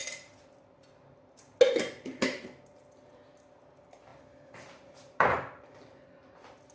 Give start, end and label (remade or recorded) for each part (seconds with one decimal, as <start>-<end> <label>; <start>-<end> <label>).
0.0-4.1 recorded; 4.1-5.7 remade; 5.7-6.7 recorded